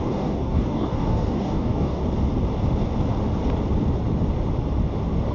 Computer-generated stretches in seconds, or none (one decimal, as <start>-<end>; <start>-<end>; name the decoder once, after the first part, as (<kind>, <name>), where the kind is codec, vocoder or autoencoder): 0.0-2.0 (codec, DAC)